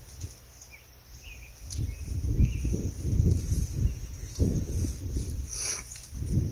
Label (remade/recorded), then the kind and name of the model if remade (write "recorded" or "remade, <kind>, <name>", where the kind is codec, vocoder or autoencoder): recorded